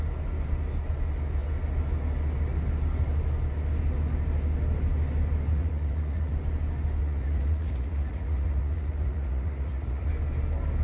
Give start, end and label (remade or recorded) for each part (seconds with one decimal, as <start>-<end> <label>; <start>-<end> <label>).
0.0-5.5 recorded; 5.5-6.3 remade; 6.3-7.0 recorded; 7.0-10.1 remade; 10.1-10.8 recorded